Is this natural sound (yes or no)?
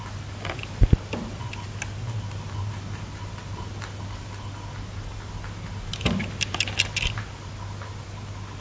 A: yes